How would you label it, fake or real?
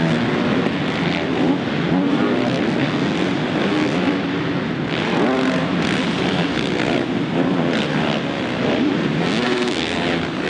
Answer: real